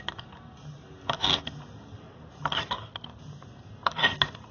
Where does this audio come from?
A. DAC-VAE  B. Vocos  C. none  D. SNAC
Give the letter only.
C